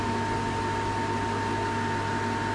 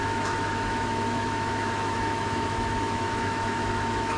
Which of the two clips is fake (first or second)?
second